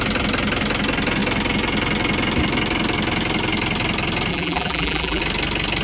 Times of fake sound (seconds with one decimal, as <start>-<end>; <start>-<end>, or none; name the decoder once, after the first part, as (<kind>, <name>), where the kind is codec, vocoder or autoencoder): 4.3-5.2 (vocoder, BigVGAN v2)